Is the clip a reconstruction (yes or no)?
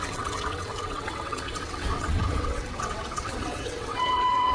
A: yes